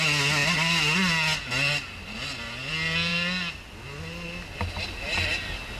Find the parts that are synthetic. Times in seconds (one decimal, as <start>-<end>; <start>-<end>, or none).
none